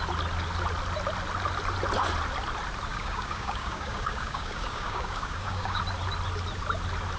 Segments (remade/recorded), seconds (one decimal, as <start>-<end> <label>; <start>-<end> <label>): 0.0-2.9 recorded; 2.9-5.8 remade; 5.8-7.2 recorded